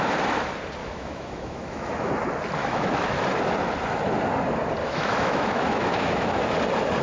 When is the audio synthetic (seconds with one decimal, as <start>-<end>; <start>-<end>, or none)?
0.8-2.1; 2.6-3.1; 4.8-6.4